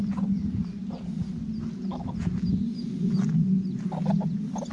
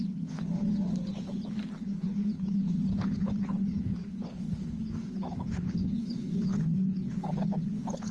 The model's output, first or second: second